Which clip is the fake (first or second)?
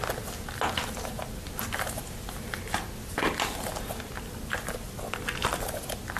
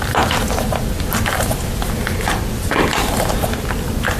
second